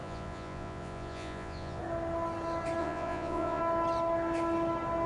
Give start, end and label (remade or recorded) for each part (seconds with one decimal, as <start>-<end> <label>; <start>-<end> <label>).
0.0-1.8 remade; 1.8-2.8 recorded; 2.8-3.6 remade; 3.6-5.1 recorded